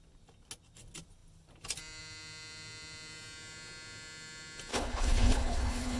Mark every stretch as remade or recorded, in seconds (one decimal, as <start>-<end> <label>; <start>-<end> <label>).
0.0-4.7 recorded; 4.7-6.0 remade

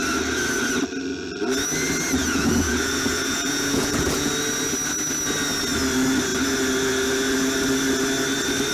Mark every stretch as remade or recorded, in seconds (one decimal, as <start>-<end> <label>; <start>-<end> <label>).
0.0-2.2 recorded; 2.2-4.3 remade; 4.3-8.7 recorded

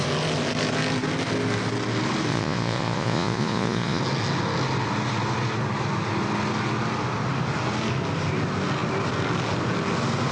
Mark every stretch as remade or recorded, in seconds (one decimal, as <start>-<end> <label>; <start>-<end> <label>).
0.0-2.3 recorded; 2.3-4.0 remade; 4.0-10.3 recorded

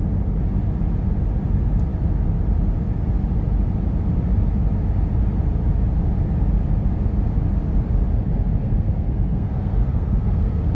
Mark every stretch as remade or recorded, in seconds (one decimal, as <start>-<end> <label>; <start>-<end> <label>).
0.0-8.6 recorded; 8.6-10.7 remade

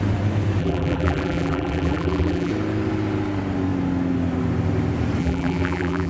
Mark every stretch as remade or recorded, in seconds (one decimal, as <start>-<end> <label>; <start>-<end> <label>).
0.0-0.6 recorded; 0.6-2.5 remade; 2.5-5.2 recorded; 5.2-6.1 remade

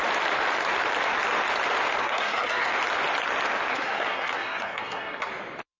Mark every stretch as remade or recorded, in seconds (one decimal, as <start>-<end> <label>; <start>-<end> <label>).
0.0-2.0 recorded; 2.0-2.7 remade; 2.7-3.7 recorded; 3.7-5.3 remade; 5.3-5.8 recorded